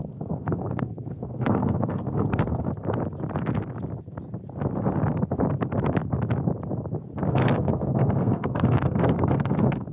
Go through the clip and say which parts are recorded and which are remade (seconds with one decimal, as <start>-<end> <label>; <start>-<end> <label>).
0.0-2.7 remade; 2.7-7.3 recorded; 7.3-9.9 remade